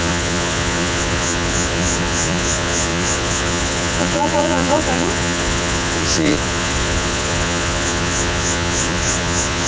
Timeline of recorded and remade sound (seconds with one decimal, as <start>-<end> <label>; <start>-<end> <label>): 0.0-9.7 remade